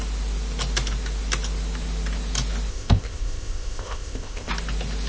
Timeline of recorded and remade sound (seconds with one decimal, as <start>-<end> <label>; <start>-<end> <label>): 0.0-2.7 recorded; 2.7-4.5 remade; 4.5-5.1 recorded